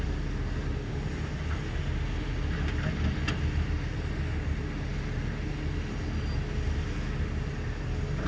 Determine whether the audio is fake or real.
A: real